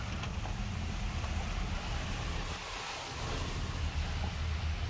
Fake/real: real